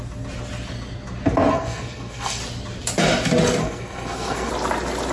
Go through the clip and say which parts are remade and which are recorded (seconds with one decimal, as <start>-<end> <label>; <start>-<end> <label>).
0.0-1.5 recorded; 1.5-2.4 remade; 2.4-3.6 recorded; 3.6-4.5 remade; 4.5-5.1 recorded